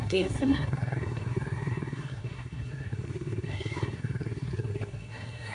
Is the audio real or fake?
fake